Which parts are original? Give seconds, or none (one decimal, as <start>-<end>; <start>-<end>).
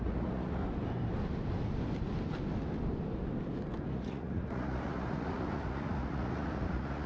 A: 0.6-3.9